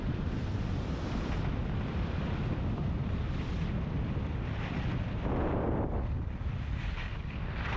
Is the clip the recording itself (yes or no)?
no